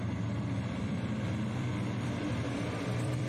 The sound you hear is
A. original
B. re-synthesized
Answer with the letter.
B